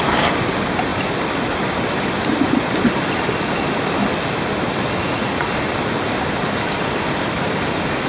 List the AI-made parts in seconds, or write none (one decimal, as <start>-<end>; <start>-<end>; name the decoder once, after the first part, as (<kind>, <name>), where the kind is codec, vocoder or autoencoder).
5.0-5.5 (vocoder, Vocos)